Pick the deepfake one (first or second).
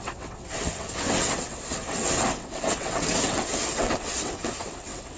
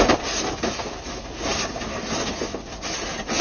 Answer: first